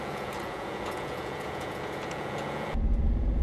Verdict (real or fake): fake